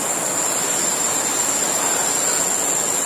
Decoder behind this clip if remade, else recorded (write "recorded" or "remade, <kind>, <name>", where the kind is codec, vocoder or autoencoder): recorded